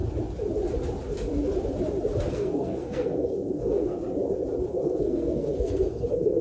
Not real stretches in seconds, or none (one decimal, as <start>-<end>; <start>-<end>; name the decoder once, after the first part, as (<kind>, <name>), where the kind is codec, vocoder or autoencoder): 2.3-4.0 (codec, SNAC); 4.7-6.4